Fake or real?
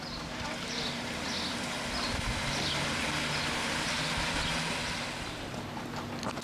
real